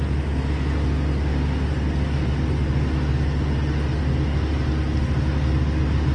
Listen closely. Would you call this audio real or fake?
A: real